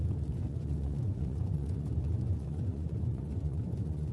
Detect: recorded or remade remade